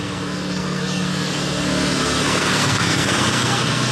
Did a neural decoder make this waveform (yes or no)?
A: yes